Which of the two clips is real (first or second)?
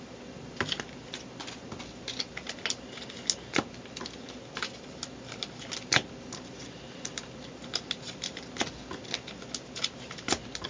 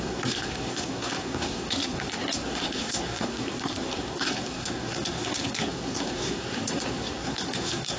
first